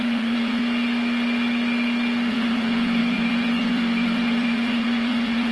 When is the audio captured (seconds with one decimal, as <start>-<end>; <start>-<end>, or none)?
0.6-2.3